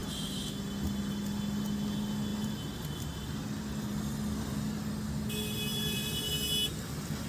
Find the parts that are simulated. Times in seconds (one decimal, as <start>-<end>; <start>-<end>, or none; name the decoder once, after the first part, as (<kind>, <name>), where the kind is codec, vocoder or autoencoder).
0.0-0.5 (vocoder, BigVGAN v2); 5.7-6.3; 6.7-7.3

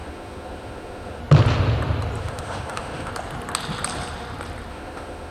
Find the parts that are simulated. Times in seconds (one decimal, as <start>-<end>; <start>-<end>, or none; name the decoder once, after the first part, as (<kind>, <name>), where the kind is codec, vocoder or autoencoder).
0.0-1.2 (autoencoder, DAC-VAE); 2.2-3.1; 4.7-5.3

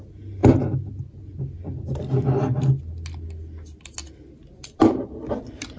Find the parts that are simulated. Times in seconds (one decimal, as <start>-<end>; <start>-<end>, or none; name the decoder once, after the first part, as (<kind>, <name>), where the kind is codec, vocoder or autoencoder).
none

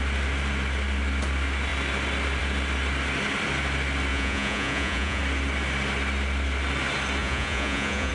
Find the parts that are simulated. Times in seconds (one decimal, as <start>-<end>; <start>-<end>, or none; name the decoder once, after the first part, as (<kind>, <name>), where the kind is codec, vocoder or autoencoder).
4.1-5.2 (vocoder, Vocos); 7.2-8.1

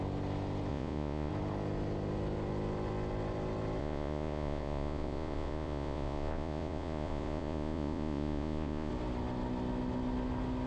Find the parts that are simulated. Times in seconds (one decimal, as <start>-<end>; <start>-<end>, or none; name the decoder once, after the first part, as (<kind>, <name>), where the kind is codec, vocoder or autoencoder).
0.7-1.3 (vocoder, Vocos); 3.8-8.9